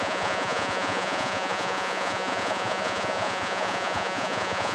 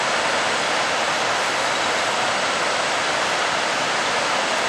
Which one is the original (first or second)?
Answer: second